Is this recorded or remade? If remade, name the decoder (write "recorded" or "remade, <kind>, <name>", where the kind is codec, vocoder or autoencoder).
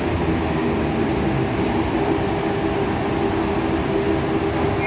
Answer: recorded